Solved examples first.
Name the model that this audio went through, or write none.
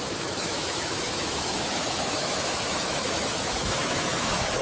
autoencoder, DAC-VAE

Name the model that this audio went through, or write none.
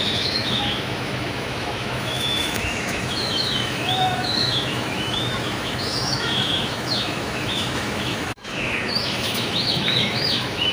autoencoder, DAC-VAE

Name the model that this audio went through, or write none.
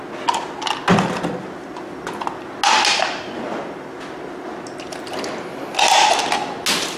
none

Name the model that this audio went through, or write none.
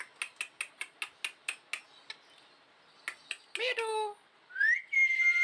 none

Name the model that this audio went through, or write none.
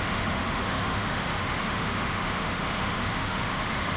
autoencoder, DAC-VAE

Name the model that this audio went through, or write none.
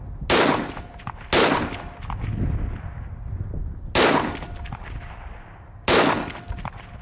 none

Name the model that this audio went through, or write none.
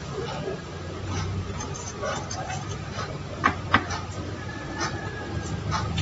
none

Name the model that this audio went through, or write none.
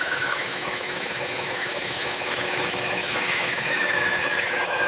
autoencoder, DAC-VAE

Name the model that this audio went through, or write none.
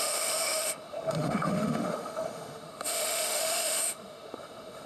autoencoder, DAC-VAE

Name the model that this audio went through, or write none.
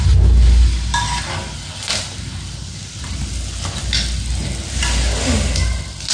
none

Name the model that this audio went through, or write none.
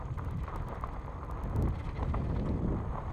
none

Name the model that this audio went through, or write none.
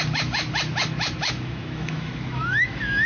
autoencoder, DAC-VAE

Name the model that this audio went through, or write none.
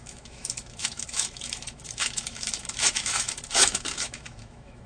autoencoder, DAC-VAE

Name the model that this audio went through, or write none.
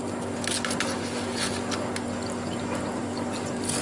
none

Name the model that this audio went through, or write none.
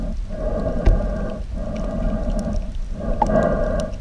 none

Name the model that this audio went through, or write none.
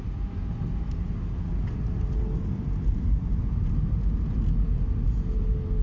none